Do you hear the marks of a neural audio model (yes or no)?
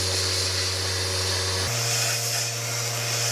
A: no